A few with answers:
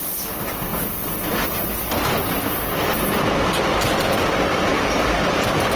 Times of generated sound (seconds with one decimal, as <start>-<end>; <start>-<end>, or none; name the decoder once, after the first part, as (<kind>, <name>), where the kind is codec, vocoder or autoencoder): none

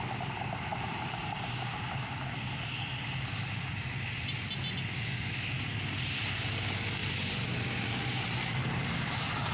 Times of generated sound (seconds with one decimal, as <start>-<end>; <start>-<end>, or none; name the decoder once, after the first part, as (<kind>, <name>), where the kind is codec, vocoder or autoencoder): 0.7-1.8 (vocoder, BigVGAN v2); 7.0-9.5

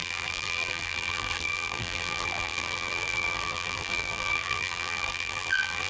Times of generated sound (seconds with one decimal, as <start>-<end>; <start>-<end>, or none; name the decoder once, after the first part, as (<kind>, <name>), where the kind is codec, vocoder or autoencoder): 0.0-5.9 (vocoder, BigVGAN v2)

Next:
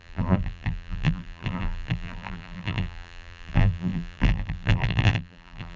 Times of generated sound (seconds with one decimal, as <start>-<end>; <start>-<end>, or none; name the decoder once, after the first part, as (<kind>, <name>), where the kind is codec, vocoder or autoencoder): 0.0-5.8 (vocoder, BigVGAN v2)

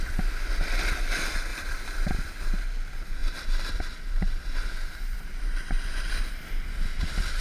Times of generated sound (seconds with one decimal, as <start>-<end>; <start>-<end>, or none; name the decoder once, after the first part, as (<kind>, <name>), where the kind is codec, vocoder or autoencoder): 1.5-2.1 (vocoder, BigVGAN v2); 3.2-6.2

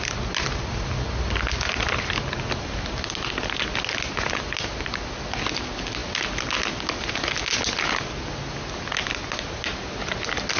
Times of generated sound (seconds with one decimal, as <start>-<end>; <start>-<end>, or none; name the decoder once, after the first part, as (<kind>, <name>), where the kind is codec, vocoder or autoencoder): none

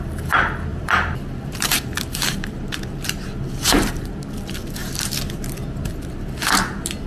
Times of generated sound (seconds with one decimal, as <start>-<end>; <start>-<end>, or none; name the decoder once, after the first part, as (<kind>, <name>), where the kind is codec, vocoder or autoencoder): 0.7-4.2 (vocoder, BigVGAN v2)